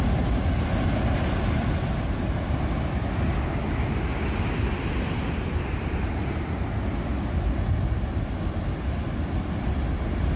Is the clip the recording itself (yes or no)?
yes